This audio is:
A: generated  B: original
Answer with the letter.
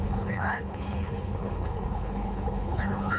A